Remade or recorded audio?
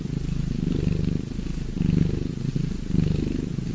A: recorded